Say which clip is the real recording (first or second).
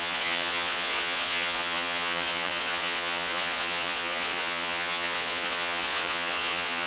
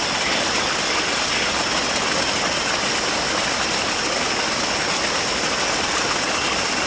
second